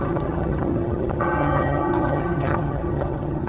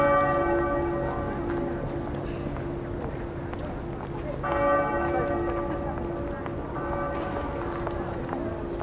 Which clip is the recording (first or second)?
second